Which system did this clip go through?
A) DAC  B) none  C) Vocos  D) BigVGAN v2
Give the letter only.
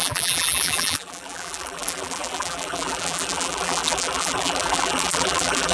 D